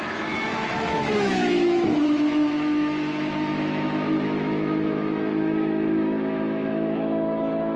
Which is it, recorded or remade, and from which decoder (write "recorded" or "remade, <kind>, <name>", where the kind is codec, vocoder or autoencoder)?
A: remade, autoencoder, DAC-VAE